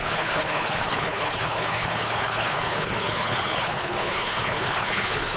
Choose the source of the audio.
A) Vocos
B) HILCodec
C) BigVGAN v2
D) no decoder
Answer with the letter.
B